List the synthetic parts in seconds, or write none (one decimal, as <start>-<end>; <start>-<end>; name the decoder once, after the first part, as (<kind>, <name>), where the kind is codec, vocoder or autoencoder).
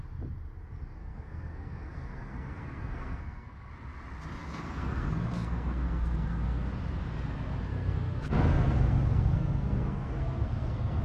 1.0-3.7 (codec, SNAC); 4.4-6.7; 7.7-11.0